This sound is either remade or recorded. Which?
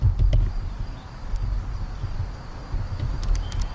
recorded